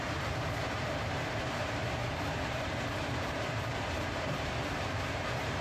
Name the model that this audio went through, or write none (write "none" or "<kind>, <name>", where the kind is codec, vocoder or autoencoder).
vocoder, BigVGAN v2